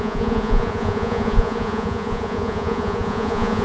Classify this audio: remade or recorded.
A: remade